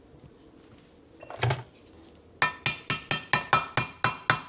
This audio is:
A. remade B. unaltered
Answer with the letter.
B